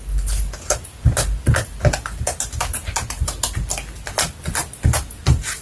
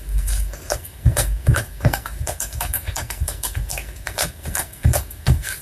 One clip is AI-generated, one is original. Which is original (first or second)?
first